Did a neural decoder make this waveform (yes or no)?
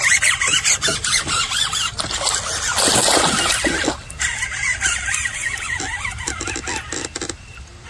no